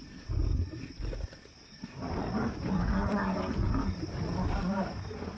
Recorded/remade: recorded